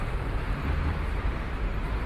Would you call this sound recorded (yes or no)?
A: no